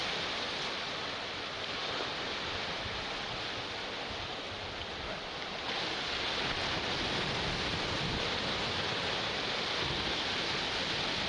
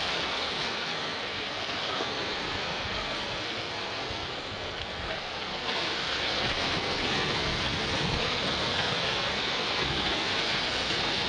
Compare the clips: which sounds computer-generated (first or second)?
second